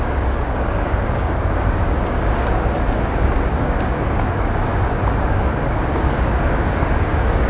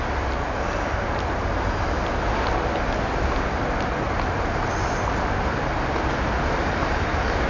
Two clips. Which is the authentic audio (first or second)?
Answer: second